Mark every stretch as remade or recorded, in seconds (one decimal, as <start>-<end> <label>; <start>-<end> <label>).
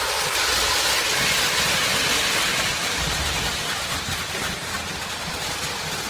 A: 0.0-2.5 recorded; 2.5-4.9 remade; 4.9-6.1 recorded